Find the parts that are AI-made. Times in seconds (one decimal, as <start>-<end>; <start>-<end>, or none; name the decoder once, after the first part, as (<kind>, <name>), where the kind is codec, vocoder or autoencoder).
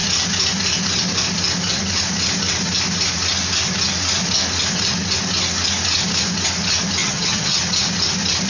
7.0-7.6 (vocoder, HiFi-GAN)